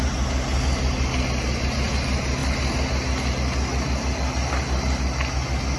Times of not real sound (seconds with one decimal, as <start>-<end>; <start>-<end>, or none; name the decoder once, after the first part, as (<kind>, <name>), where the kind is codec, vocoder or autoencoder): none